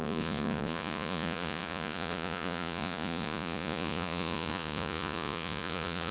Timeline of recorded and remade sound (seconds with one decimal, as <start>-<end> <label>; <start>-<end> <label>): 0.0-6.1 remade